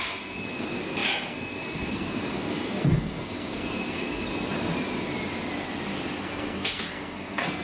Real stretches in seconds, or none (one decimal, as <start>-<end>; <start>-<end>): 4.3-6.2